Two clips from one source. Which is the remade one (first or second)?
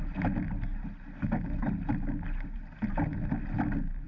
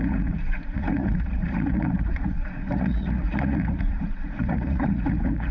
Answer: second